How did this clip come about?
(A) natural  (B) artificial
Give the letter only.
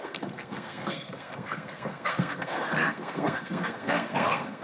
B